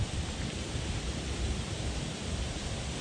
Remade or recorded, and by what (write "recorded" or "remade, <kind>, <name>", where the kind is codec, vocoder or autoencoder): recorded